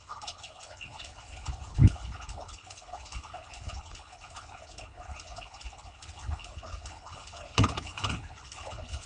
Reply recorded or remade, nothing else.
remade